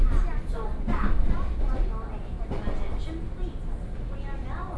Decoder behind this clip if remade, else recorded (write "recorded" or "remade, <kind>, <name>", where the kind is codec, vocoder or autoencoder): recorded